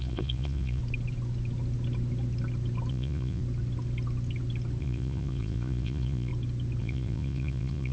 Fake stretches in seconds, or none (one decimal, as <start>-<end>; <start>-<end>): 0.0-0.8; 2.9-3.4; 4.8-6.3; 6.8-7.9